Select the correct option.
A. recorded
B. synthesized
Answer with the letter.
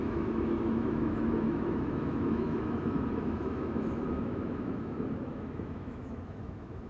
B